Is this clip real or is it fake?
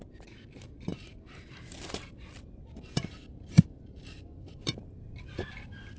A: fake